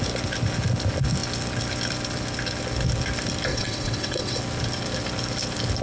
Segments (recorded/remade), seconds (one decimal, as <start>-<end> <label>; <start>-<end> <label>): 0.0-3.5 recorded; 3.5-4.4 remade; 4.4-5.8 recorded